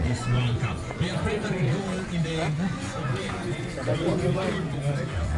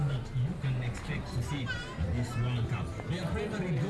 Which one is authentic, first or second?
second